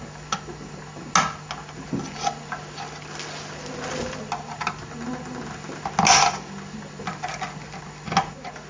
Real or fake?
real